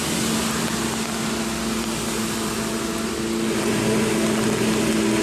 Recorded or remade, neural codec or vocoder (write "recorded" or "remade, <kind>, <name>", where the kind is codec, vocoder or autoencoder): recorded